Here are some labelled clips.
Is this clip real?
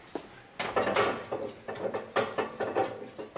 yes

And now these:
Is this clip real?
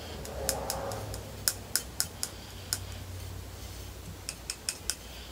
yes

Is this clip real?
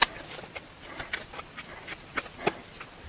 yes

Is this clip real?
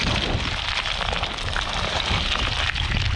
yes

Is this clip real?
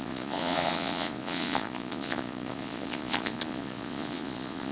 no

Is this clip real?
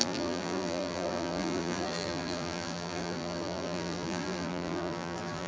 no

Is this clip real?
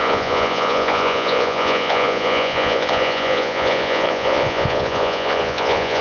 no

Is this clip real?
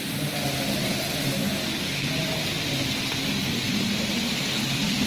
yes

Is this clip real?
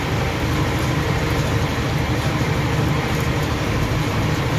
no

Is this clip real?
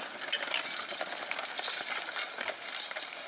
yes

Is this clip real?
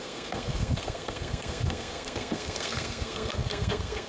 no